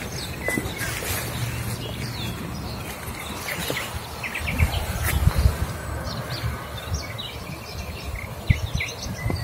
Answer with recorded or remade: recorded